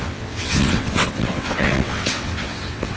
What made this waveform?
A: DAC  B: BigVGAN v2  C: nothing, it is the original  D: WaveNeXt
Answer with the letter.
D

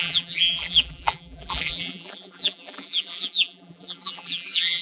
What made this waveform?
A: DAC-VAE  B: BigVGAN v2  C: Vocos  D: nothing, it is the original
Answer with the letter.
B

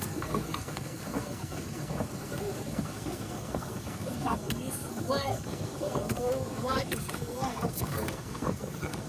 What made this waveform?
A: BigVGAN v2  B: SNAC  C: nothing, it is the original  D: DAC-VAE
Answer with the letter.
B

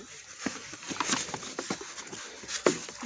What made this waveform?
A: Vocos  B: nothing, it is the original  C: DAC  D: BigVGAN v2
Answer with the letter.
B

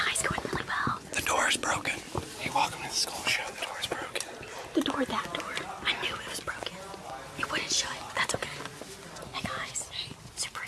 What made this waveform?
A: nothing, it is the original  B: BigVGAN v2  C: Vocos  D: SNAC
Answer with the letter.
A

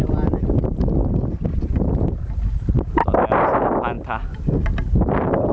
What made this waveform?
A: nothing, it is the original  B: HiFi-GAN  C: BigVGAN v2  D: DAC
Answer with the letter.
A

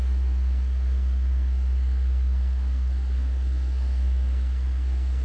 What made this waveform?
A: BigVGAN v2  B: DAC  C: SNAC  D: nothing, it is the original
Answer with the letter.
C